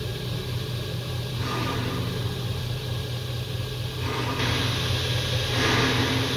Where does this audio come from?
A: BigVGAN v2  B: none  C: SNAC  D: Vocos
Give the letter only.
B